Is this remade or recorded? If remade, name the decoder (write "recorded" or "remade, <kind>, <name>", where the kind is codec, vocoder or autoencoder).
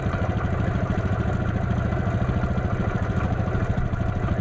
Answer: recorded